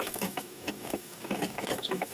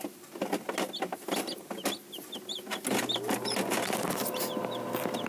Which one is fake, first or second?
first